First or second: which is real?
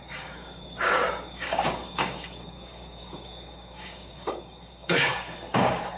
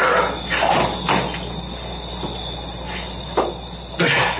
second